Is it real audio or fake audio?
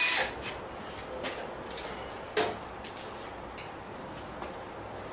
real